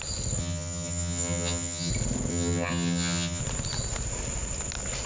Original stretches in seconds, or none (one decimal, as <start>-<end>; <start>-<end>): 0.0-0.4; 1.9-2.3; 3.4-5.1